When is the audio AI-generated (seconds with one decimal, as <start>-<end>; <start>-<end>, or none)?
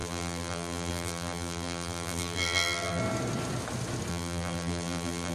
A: 0.0-3.0; 4.1-5.3